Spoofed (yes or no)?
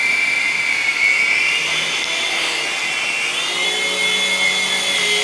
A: no